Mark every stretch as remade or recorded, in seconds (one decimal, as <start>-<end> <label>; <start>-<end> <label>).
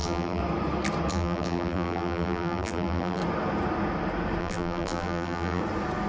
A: 0.0-0.4 remade; 0.4-1.1 recorded; 1.1-3.2 remade; 3.2-4.4 recorded; 4.4-5.6 remade; 5.6-6.1 recorded